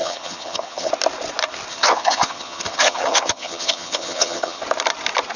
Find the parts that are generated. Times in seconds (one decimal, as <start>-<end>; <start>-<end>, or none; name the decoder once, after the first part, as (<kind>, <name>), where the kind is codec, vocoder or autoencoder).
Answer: 0.0-0.9 (vocoder, HiFi-GAN); 1.7-4.6